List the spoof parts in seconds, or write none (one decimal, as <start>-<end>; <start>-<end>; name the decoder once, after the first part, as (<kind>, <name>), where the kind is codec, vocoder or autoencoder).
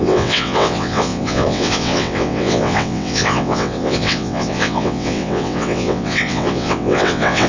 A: 0.0-7.5 (vocoder, WaveNeXt)